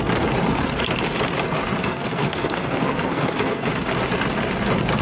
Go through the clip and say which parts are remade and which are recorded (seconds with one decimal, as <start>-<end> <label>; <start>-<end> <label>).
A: 0.0-1.8 recorded; 1.8-3.7 remade; 3.7-5.0 recorded